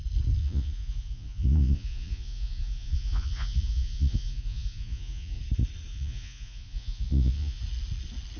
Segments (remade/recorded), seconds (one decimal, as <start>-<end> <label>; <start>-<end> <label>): 0.0-0.4 recorded; 0.4-5.4 remade; 5.4-5.9 recorded; 5.9-7.6 remade; 7.6-8.4 recorded